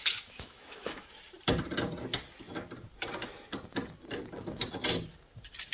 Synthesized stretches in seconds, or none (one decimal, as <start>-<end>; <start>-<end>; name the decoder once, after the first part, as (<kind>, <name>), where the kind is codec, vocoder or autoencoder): 0.0-1.1 (autoencoder, DAC-VAE)